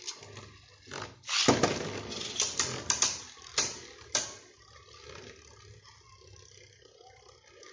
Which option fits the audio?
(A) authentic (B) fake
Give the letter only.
A